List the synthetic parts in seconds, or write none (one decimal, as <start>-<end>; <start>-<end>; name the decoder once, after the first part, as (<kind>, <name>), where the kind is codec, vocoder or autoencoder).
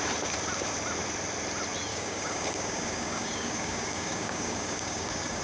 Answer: 1.9-5.4 (codec, DAC)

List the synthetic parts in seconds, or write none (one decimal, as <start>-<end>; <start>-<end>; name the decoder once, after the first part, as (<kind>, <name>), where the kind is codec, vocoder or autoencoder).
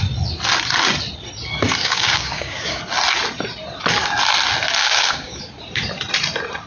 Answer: 1.8-2.8 (codec, DAC); 4.8-5.4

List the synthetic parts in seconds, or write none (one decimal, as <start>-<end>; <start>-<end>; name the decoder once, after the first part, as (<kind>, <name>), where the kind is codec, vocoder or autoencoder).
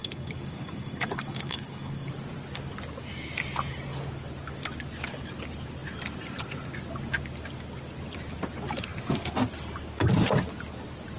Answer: 0.0-2.1 (codec, DAC)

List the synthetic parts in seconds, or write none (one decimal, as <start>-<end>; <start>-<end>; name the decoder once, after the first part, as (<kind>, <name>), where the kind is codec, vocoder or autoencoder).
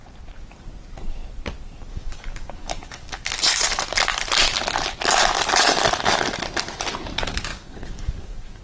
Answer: 1.9-3.4 (codec, DAC); 7.5-8.6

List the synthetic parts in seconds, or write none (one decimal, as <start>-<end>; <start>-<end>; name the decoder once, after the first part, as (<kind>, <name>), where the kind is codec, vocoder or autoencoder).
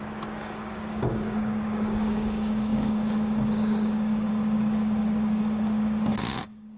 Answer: 0.0-6.8 (codec, DAC)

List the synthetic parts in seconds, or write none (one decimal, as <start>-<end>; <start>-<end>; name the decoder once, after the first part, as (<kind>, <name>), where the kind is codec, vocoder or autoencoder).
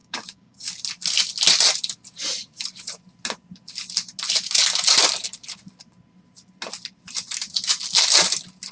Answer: 0.0-0.7 (codec, DAC)